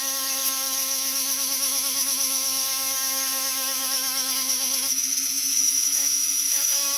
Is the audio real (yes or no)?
no